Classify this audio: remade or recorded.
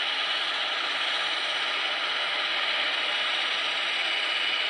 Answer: recorded